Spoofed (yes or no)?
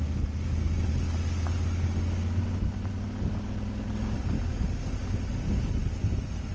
no